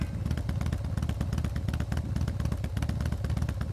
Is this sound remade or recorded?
recorded